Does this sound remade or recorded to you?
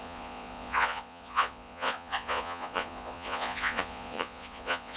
remade